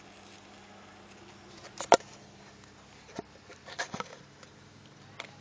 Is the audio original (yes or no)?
yes